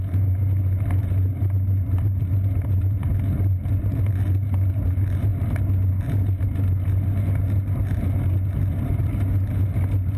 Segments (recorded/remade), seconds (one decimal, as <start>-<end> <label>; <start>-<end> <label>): 0.0-10.2 recorded